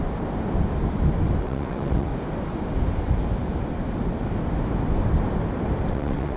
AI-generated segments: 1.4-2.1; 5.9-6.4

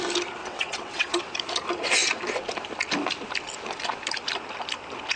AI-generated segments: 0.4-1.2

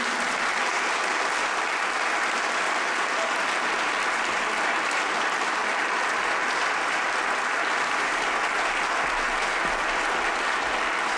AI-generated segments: none